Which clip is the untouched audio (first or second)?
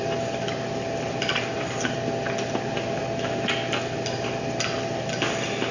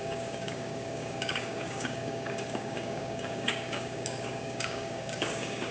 first